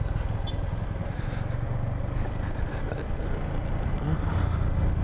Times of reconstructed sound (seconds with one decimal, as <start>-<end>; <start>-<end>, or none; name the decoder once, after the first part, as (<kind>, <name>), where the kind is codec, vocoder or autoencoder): none

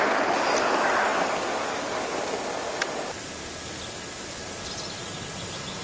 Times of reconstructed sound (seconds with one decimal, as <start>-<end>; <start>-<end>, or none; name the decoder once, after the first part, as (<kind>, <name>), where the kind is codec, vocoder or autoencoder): none

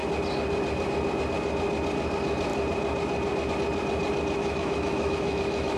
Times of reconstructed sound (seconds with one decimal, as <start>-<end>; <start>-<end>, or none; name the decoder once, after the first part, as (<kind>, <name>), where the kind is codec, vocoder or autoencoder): 4.4-5.8 (autoencoder, DAC-VAE)

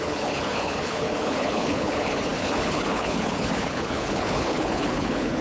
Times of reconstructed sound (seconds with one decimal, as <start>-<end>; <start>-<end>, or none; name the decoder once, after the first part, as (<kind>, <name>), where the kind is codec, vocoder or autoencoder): 0.0-5.4 (codec, HILCodec)

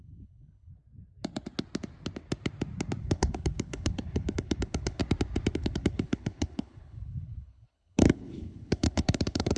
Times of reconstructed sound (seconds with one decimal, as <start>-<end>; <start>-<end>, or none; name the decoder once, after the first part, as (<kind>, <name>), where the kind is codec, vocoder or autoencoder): 0.0-0.7 (codec, HILCodec); 3.0-5.0; 5.5-9.6

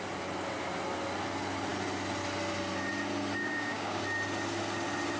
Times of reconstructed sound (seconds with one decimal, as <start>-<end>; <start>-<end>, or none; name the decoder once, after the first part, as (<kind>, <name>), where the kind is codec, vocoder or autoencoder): 3.4-4.0 (codec, DAC)

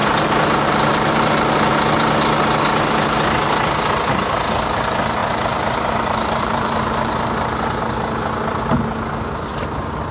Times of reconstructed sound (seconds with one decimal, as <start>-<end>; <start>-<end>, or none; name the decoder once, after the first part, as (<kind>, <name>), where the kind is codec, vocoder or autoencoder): 0.0-1.7 (vocoder, BigVGAN v2); 5.2-7.8